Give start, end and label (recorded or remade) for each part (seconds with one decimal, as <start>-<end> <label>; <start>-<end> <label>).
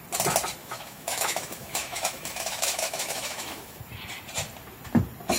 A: 0.0-0.6 recorded; 0.6-3.8 remade; 3.8-5.4 recorded